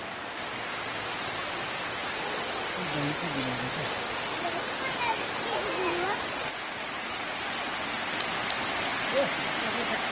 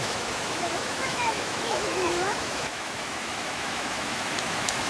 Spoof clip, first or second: second